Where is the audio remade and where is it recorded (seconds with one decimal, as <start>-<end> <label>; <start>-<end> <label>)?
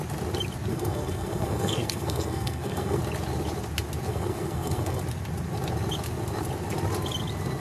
0.0-0.7 recorded; 0.7-3.0 remade; 3.0-4.1 recorded; 4.1-5.0 remade; 5.0-7.6 recorded